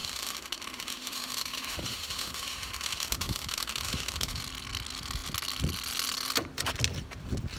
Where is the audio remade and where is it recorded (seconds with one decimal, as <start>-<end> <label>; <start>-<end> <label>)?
0.0-4.4 remade; 4.4-7.6 recorded